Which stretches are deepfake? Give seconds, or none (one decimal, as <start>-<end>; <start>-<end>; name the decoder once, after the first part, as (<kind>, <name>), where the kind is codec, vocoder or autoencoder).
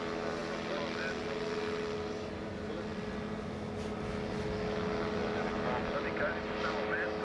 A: none